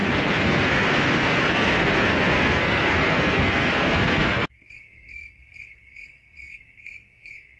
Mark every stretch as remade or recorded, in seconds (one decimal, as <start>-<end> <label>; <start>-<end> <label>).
0.0-7.6 remade

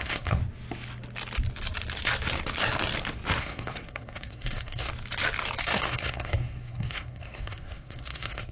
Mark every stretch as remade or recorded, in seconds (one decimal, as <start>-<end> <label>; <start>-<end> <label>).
0.0-0.4 remade; 0.4-3.4 recorded; 3.4-4.9 remade; 4.9-5.6 recorded; 5.6-8.5 remade

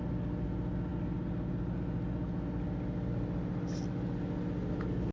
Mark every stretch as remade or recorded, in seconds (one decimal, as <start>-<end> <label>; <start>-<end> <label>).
0.0-5.1 recorded

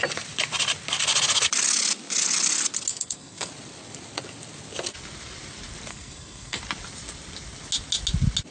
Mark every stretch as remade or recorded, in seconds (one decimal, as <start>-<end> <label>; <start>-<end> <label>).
0.0-2.9 recorded; 2.9-3.5 remade; 3.5-5.9 recorded; 5.9-6.6 remade; 6.6-8.5 recorded

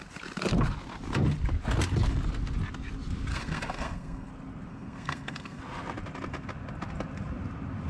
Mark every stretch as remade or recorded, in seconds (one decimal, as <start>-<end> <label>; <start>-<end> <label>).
0.0-3.3 recorded; 3.3-4.3 remade; 4.3-4.7 recorded; 4.7-5.6 remade; 5.6-7.9 recorded

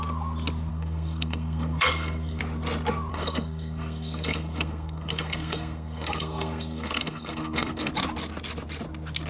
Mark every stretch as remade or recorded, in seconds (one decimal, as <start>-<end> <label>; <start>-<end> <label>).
0.0-0.7 recorded; 0.7-2.4 remade; 2.4-3.1 recorded; 3.1-7.9 remade; 7.9-9.3 recorded

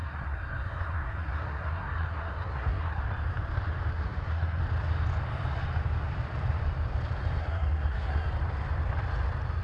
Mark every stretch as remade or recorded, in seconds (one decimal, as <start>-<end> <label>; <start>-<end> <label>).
0.0-3.0 remade; 3.0-3.9 recorded; 3.9-4.6 remade; 4.6-7.4 recorded; 7.4-8.3 remade; 8.3-9.6 recorded